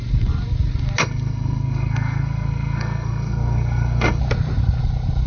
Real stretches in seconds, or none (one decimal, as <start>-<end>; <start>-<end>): 0.0-1.0; 4.2-5.3